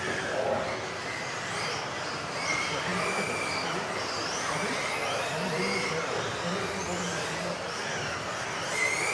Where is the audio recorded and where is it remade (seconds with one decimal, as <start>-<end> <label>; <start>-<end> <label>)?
0.0-9.1 recorded